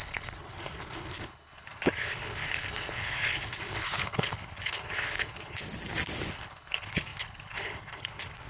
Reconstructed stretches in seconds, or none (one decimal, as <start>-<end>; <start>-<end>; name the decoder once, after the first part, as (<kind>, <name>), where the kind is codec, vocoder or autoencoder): 0.0-5.6 (codec, HILCodec); 6.3-8.5